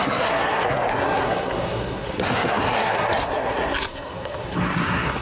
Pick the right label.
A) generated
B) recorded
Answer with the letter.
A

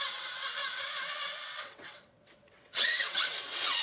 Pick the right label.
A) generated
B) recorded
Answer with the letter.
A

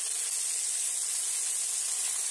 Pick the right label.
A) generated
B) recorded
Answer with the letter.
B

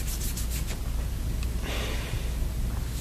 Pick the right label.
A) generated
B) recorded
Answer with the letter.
B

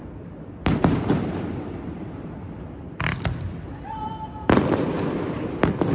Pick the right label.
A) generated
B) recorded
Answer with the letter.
A